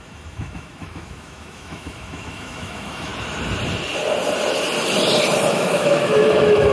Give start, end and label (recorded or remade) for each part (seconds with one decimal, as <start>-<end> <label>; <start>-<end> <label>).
0.0-3.1 remade; 3.1-5.5 recorded; 5.5-6.7 remade